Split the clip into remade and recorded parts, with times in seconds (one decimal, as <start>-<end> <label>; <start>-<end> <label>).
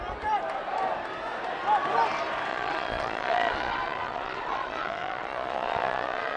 0.0-2.5 recorded; 2.5-6.4 remade